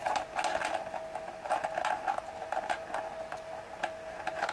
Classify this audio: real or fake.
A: real